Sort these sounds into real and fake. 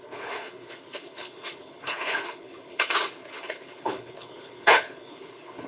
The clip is fake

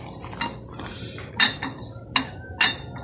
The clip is real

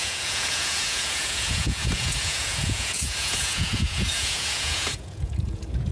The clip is fake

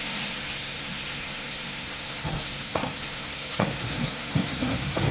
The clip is fake